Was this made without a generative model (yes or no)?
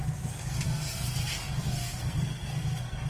no